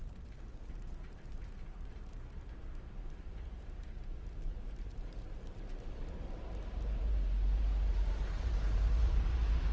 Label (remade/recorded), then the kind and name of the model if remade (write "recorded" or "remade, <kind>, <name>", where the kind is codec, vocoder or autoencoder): remade, vocoder, BigVGAN v2